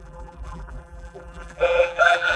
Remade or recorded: remade